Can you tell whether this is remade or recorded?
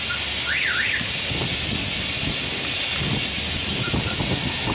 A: recorded